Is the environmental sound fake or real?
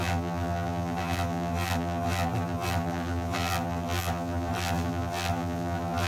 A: fake